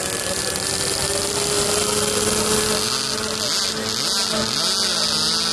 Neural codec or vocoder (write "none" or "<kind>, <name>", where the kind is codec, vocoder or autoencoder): none